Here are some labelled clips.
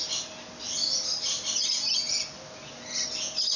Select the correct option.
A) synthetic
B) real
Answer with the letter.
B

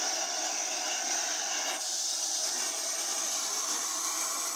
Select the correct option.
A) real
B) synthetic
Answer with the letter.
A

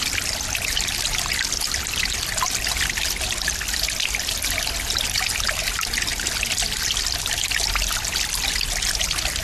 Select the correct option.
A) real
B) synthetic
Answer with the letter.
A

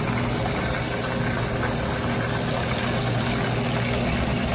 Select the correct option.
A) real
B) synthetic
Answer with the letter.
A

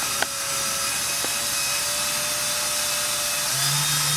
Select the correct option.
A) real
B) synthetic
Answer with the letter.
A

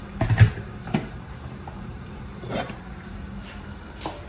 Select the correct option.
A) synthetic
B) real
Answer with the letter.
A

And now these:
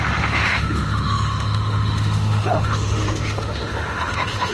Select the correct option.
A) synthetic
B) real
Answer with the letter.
A